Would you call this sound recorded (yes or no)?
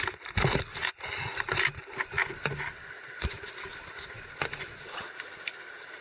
yes